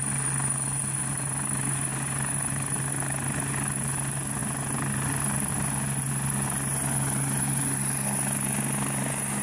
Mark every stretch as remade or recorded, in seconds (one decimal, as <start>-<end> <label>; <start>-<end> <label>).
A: 0.0-9.4 recorded